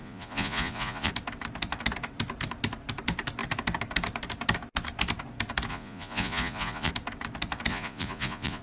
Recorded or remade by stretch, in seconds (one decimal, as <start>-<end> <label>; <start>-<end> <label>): 0.0-1.1 remade; 1.1-5.7 recorded; 5.7-6.9 remade; 6.9-7.7 recorded; 7.7-8.6 remade